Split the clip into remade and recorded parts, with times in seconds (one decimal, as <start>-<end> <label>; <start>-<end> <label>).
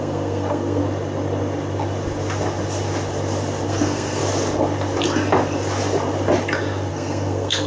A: 0.0-0.8 remade; 0.8-3.7 recorded; 3.7-4.2 remade; 4.2-6.9 recorded; 6.9-7.7 remade